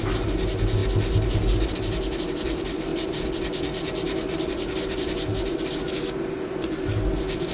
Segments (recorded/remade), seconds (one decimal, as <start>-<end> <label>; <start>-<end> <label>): 0.0-7.5 recorded